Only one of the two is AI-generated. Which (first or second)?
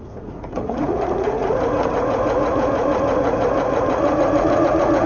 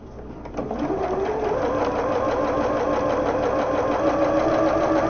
first